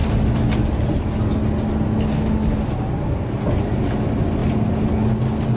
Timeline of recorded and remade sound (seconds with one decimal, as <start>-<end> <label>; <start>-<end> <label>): 0.0-5.6 recorded